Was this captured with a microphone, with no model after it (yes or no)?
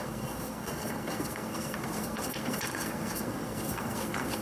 no